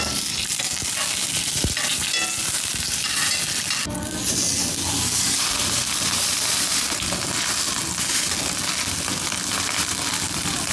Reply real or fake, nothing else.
real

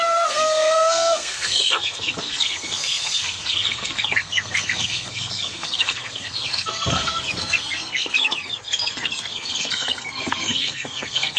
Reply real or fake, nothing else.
fake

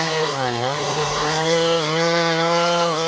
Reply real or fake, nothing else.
fake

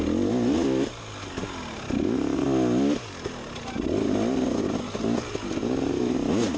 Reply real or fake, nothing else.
real